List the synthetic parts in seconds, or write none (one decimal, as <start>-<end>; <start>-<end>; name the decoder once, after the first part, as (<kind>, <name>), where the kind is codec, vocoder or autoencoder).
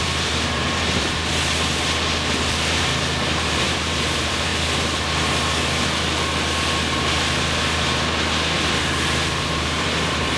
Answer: 0.0-1.2 (vocoder, BigVGAN v2); 2.8-4.5; 9.5-10.4